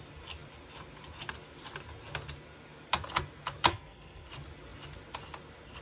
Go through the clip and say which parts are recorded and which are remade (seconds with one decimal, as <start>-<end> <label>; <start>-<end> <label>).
0.0-3.7 recorded; 3.7-4.3 remade; 4.3-5.8 recorded